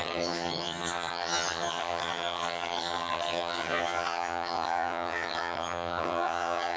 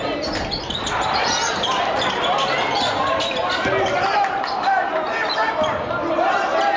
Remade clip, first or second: first